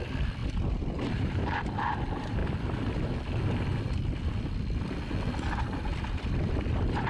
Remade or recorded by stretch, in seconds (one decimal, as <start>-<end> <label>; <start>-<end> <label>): 0.0-0.4 recorded; 0.4-1.7 remade; 1.7-5.9 recorded; 5.9-7.1 remade